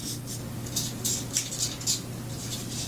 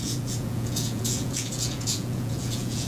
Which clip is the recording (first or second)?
first